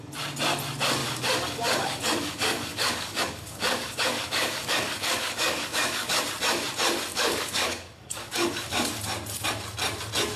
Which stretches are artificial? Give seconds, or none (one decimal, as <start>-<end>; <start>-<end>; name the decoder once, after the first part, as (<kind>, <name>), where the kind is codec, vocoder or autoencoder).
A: 1.0-6.2 (codec, DAC); 7.1-8.9